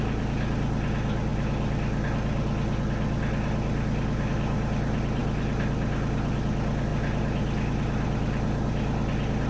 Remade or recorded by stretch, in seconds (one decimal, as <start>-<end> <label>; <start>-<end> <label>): 0.0-9.5 recorded